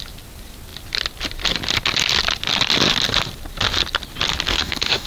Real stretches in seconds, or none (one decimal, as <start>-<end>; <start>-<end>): 0.0-4.5